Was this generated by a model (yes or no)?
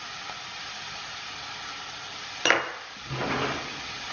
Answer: no